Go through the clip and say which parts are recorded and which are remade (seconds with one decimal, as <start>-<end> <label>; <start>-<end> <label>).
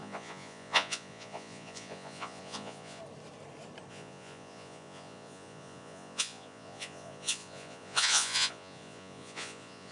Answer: 0.0-3.0 remade; 3.0-3.9 recorded; 3.9-9.9 remade